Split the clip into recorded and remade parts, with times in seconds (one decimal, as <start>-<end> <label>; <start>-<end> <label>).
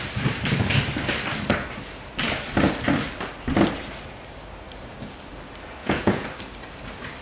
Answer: 0.0-5.8 recorded; 5.8-6.3 remade; 6.3-7.2 recorded